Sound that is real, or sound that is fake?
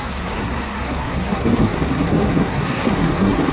fake